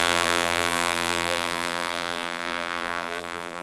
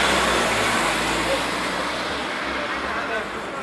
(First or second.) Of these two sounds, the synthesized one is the first